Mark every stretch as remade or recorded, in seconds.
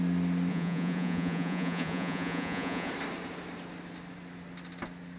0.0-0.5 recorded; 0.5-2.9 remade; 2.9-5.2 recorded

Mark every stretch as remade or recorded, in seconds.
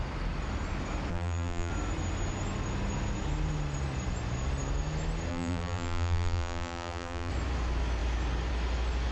0.0-1.1 recorded; 1.1-1.7 remade; 1.7-5.3 recorded; 5.3-7.3 remade; 7.3-9.1 recorded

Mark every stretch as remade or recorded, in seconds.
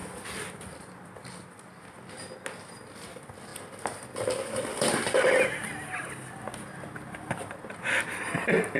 0.0-8.8 recorded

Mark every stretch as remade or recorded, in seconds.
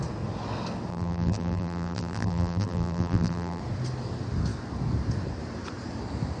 0.0-0.9 recorded; 0.9-3.6 remade; 3.6-6.4 recorded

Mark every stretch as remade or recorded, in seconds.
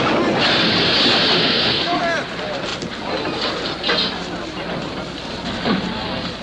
0.0-1.4 recorded; 1.4-2.0 remade; 2.0-6.4 recorded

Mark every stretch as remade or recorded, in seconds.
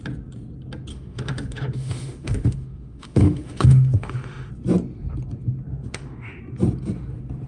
0.0-0.9 recorded; 0.9-4.5 remade; 4.5-5.7 recorded; 5.7-6.4 remade; 6.4-7.5 recorded